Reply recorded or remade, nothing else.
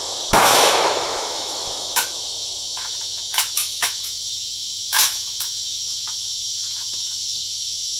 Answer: remade